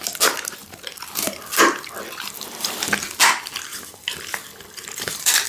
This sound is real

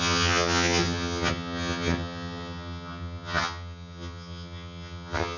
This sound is fake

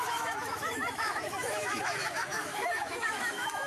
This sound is fake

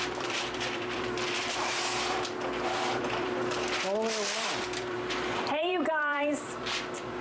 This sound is fake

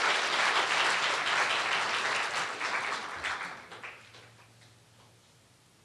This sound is real